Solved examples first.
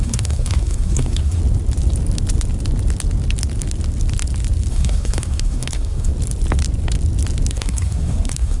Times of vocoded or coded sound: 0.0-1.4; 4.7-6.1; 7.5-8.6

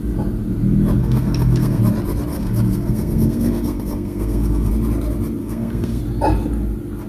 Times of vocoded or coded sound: 1.0-1.8; 2.3-4.7; 5.4-6.0

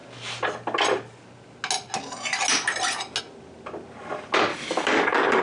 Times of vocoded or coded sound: 4.5-5.4

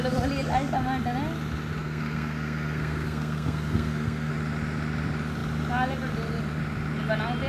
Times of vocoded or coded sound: 1.8-4.3

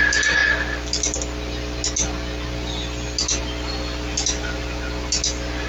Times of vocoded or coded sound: none

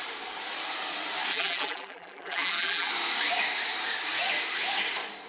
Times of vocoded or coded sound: 1.3-2.9

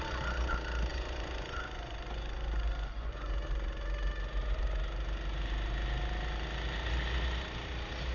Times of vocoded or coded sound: 0.9-3.3